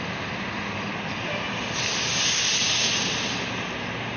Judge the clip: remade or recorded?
recorded